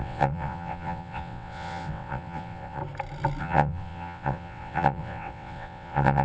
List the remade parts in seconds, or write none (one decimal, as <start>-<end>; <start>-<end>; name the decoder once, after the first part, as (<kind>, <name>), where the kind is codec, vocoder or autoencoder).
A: 0.0-2.8 (vocoder, WaveNeXt); 3.4-6.2